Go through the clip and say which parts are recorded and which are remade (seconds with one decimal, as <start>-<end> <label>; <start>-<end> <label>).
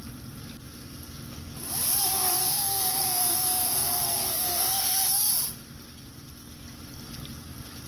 0.0-2.4 recorded; 2.4-5.0 remade; 5.0-7.9 recorded